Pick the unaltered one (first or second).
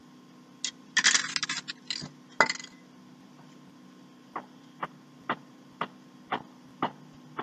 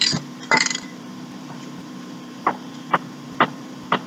first